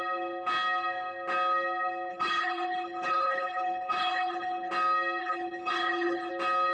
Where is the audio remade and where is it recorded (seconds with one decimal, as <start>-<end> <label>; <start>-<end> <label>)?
0.0-2.1 recorded; 2.1-4.7 remade; 4.7-5.2 recorded; 5.2-6.3 remade; 6.3-6.7 recorded